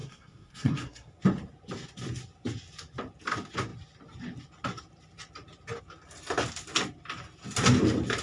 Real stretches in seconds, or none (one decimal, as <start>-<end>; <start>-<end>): 1.2-8.2